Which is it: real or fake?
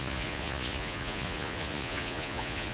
fake